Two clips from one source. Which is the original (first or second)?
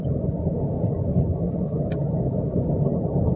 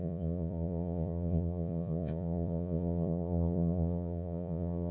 first